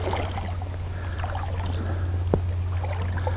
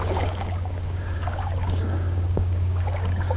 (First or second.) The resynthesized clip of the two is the second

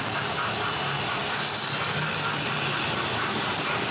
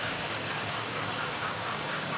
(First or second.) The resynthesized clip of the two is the second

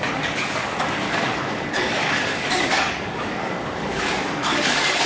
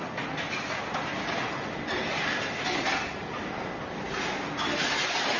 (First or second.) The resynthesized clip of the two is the first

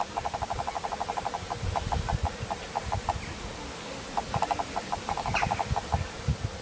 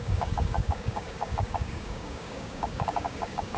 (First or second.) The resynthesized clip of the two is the second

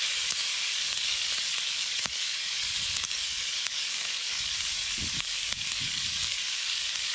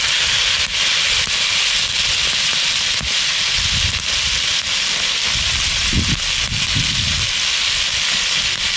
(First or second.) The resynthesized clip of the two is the first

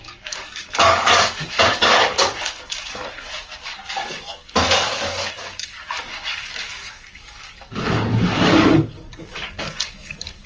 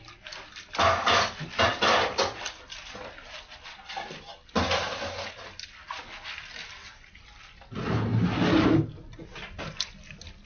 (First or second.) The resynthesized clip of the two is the first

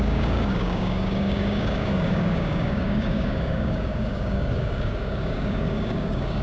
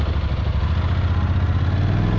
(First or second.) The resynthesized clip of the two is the first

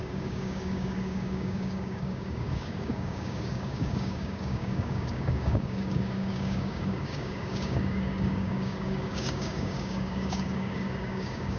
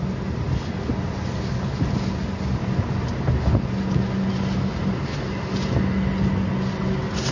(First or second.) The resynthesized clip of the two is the first